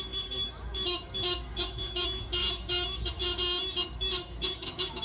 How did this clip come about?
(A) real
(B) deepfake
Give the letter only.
B